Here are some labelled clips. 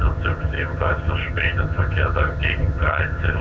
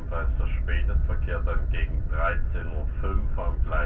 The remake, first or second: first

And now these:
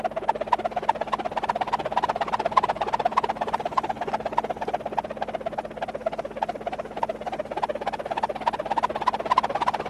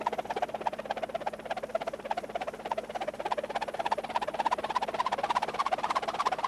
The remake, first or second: second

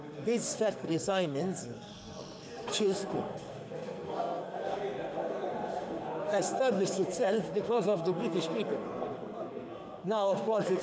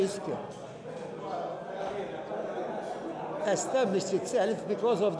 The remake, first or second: first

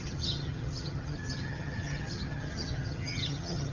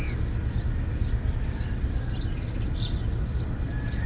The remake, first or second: first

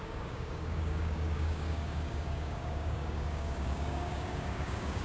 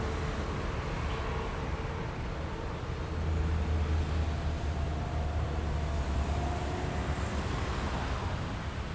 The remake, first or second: first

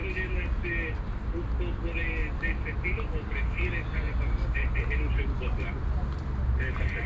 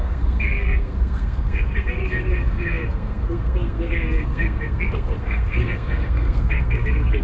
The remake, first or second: second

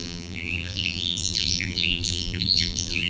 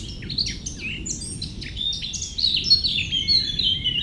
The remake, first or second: first